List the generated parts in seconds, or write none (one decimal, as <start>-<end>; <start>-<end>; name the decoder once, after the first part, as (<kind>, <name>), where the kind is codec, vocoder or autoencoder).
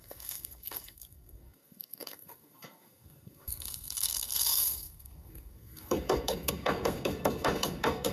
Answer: 0.0-8.1 (codec, SNAC)